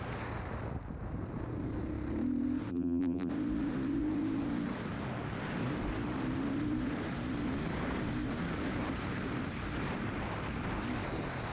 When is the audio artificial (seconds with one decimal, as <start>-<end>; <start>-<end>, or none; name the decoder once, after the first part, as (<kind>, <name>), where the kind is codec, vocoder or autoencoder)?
2.7-3.3 (vocoder, BigVGAN v2)